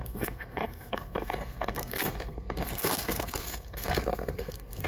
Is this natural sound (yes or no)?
no